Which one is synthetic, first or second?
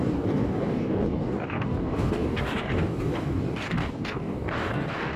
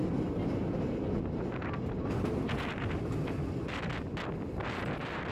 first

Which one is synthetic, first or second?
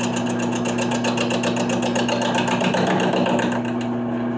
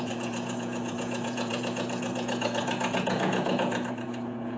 second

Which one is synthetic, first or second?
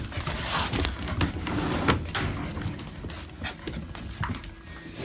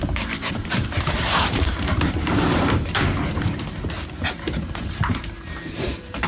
second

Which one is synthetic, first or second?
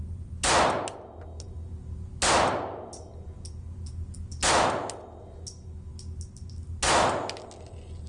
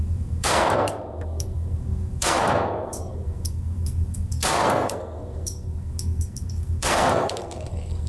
second